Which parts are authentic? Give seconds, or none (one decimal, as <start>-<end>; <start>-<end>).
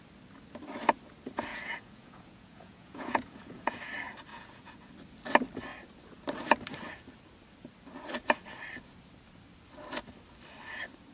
0.0-1.5; 3.8-4.3; 4.9-11.1